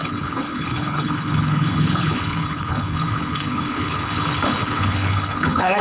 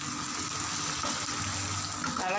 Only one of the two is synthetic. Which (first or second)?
first